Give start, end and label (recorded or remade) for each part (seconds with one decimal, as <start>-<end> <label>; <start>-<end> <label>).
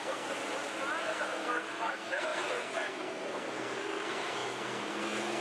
0.0-0.4 remade; 0.4-1.0 recorded; 1.0-5.4 remade